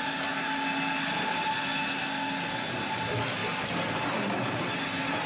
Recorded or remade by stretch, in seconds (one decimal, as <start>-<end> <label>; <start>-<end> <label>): 0.0-5.3 recorded